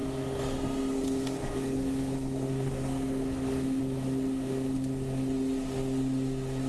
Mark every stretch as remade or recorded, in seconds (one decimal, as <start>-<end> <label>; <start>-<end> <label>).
0.0-3.8 remade; 3.8-6.7 recorded

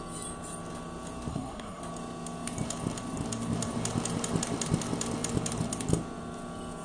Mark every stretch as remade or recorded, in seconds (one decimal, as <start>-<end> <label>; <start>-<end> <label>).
0.0-1.3 recorded; 1.3-1.8 remade; 1.8-6.8 recorded

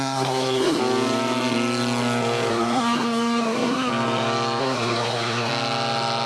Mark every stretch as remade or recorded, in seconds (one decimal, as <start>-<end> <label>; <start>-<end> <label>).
0.0-0.8 remade; 0.8-2.5 recorded; 2.5-3.9 remade; 3.9-4.6 recorded; 4.6-5.5 remade; 5.5-6.3 recorded

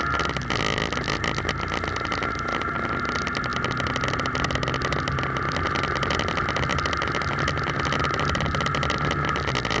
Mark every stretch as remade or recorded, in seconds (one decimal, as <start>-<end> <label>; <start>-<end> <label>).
0.0-9.8 recorded